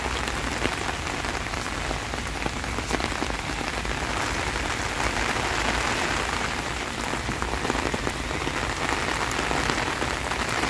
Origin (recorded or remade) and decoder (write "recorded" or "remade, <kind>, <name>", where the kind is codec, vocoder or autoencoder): recorded